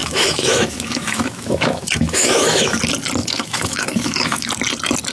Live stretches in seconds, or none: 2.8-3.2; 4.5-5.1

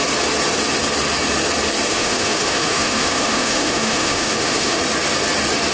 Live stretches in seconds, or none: 0.0-1.9; 4.8-5.7